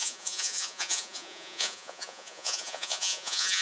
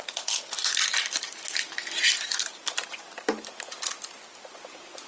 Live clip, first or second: second